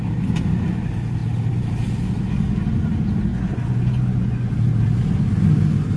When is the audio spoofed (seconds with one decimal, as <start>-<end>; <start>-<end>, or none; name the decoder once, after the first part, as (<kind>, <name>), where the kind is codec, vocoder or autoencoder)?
3.3-4.5 (vocoder, Vocos)